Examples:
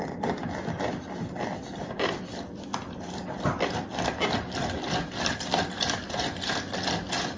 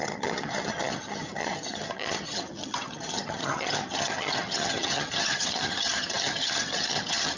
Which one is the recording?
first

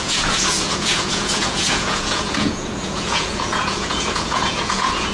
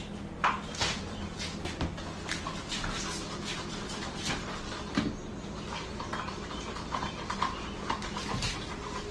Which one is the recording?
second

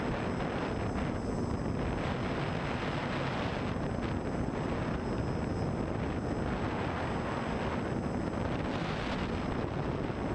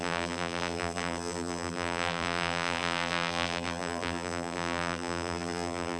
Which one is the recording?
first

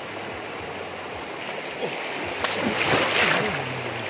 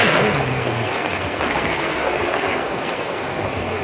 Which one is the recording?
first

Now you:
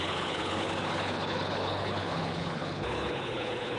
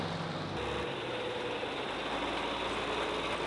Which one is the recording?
second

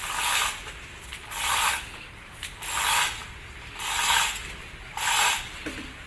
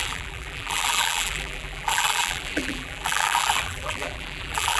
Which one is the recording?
first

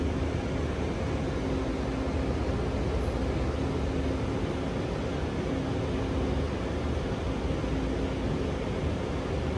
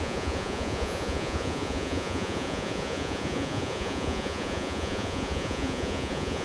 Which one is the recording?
first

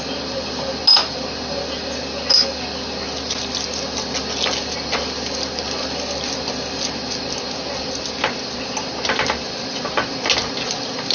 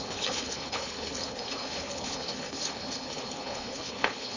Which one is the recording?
first